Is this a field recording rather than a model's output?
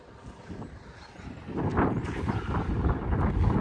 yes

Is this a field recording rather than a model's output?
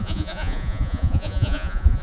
no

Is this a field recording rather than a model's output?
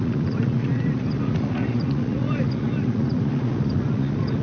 no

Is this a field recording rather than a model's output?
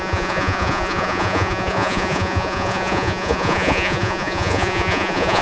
no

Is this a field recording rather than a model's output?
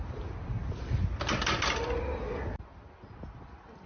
yes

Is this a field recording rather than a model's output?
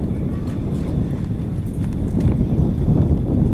yes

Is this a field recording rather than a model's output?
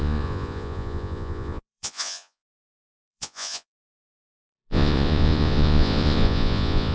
no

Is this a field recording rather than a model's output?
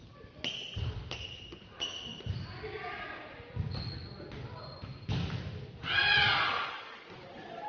yes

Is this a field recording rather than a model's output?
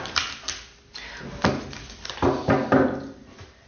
yes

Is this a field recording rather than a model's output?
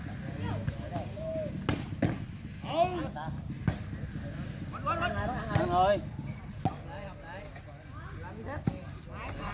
yes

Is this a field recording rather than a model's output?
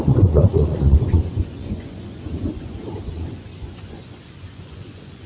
no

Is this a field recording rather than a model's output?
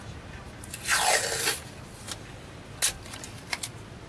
yes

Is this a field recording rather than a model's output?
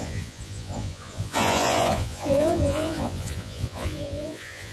no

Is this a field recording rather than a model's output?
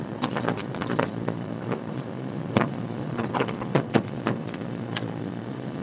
no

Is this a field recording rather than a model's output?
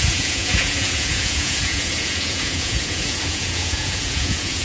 no